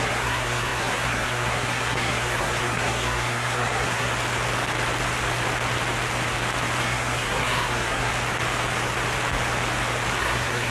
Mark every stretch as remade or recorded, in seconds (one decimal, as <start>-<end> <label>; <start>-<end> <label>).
0.0-4.1 remade; 4.1-6.8 recorded; 6.8-8.1 remade; 8.1-10.2 recorded; 10.2-10.7 remade